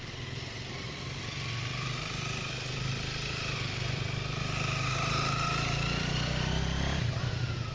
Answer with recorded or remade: remade